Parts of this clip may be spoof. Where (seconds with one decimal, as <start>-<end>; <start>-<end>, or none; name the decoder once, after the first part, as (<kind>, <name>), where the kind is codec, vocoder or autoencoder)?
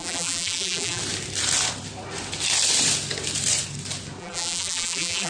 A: 0.0-1.0 (vocoder, BigVGAN v2); 4.2-5.3